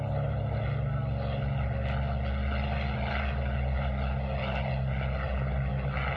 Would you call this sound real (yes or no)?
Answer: yes